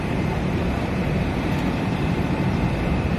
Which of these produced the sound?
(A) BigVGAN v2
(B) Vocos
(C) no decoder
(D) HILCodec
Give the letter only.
A